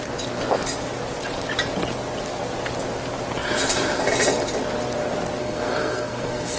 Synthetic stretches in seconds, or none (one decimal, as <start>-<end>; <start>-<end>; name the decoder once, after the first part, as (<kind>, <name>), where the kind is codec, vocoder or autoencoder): 5.4-6.6 (codec, SNAC)